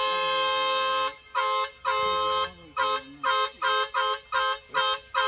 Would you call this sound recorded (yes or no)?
yes